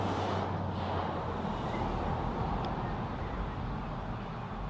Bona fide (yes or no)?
yes